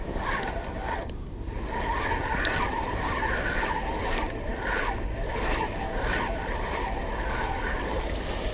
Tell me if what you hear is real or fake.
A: real